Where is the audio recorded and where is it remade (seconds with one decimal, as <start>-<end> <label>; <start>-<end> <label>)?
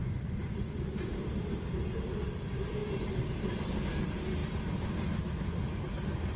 0.0-1.1 remade; 1.1-6.4 recorded